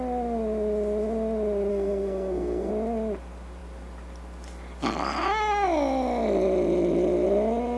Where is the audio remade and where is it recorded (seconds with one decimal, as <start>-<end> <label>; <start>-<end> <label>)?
0.0-1.7 recorded; 1.7-2.7 remade; 2.7-7.8 recorded